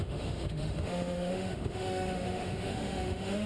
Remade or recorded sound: remade